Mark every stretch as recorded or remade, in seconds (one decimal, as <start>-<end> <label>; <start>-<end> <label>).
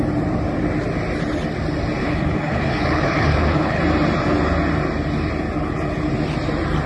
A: 0.0-2.0 recorded; 2.0-3.8 remade; 3.8-6.9 recorded